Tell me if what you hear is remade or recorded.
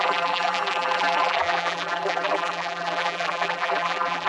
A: remade